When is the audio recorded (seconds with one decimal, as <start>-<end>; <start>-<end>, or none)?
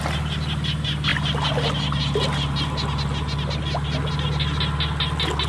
0.0-5.5